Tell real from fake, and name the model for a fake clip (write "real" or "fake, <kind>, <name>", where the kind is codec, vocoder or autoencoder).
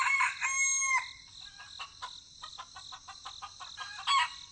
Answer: real